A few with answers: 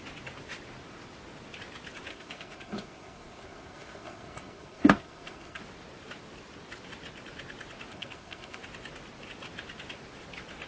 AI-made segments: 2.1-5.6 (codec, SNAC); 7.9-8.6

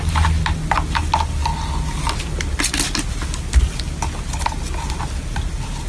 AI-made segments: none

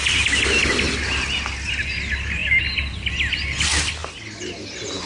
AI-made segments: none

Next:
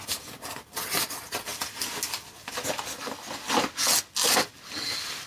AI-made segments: none

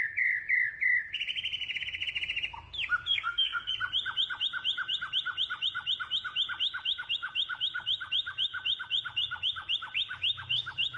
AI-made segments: 3.1-3.7 (codec, SNAC)

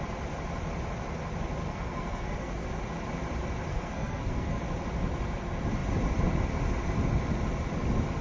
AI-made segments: 1.7-2.7 (codec, SNAC); 3.7-4.6